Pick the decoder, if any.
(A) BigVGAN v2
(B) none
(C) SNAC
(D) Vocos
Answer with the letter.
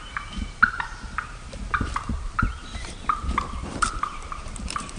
A